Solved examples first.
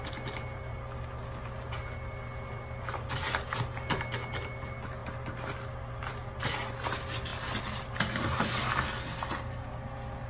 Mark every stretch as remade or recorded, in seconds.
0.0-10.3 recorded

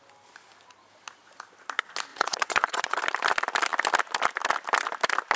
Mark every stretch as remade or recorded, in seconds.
0.0-2.1 recorded; 2.1-3.0 remade; 3.0-5.4 recorded

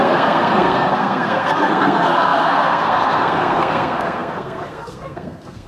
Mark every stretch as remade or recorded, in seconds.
0.0-5.7 remade

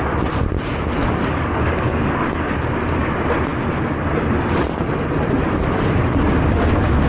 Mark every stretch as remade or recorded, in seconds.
0.0-1.5 recorded; 1.5-2.5 remade; 2.5-7.1 recorded

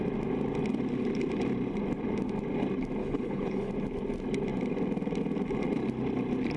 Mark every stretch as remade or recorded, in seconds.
0.0-3.0 recorded; 3.0-3.7 remade; 3.7-6.6 recorded

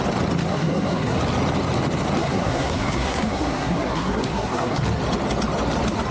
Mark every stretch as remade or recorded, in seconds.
0.0-0.5 recorded; 0.5-1.2 remade; 1.2-2.2 recorded; 2.2-4.8 remade; 4.8-6.1 recorded